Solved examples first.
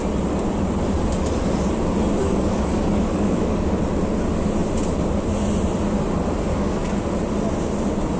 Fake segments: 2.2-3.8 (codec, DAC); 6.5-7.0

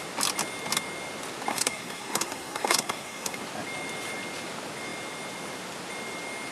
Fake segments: 1.5-3.4 (codec, SNAC)

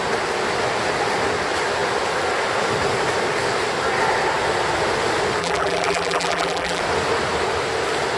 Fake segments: 5.4-6.8 (vocoder, BigVGAN v2)

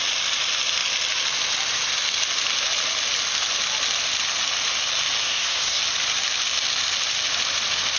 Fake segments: 5.2-5.8 (codec, SNAC)

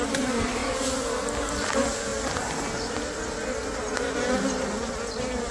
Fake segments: none